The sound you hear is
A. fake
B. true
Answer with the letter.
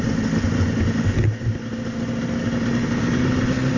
B